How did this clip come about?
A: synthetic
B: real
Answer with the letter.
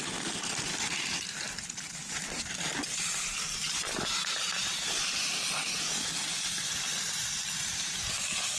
A